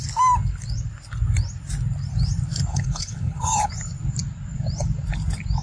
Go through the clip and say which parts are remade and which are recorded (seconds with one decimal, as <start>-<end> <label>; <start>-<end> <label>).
0.0-2.7 recorded; 2.7-3.7 remade; 3.7-5.6 recorded